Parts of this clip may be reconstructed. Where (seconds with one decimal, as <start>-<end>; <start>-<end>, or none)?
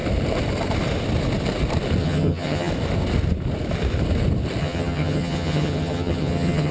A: 2.0-2.7; 4.6-6.7